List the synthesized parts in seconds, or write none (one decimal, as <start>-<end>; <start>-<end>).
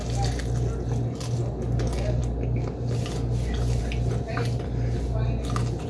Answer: none